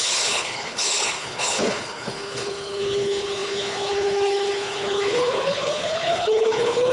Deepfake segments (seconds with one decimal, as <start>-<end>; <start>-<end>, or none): 0.0-6.9